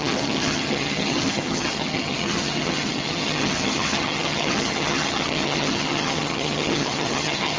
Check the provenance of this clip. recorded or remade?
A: remade